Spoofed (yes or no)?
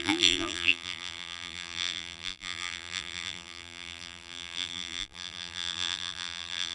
yes